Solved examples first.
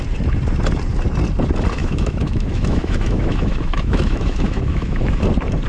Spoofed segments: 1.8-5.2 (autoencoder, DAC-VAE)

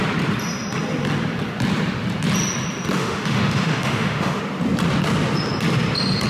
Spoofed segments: 3.0-4.4 (autoencoder, DAC-VAE)

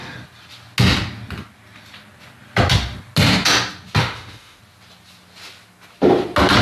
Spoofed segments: 4.0-4.6 (autoencoder, DAC-VAE)

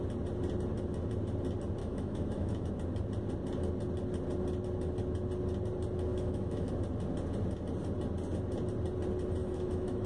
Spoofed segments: 1.8-2.7 (autoencoder, DAC-VAE); 6.1-6.7; 9.4-10.1